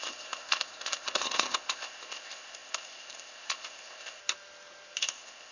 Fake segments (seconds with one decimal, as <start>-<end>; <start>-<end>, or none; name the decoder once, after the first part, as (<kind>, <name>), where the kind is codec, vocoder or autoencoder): 0.0-4.2 (codec, ZipCodec); 5.0-5.5